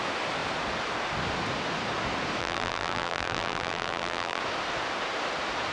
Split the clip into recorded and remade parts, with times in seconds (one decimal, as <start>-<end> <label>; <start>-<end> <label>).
0.0-2.4 recorded; 2.4-4.4 remade; 4.4-5.7 recorded